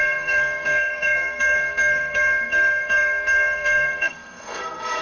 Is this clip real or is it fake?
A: fake